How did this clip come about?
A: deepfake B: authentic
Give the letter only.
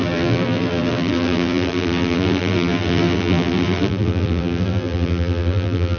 A